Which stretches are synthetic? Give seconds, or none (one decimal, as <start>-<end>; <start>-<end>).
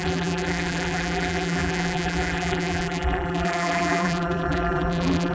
0.0-5.3